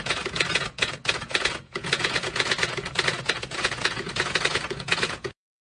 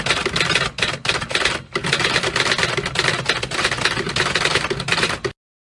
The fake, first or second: first